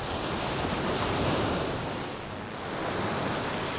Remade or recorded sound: recorded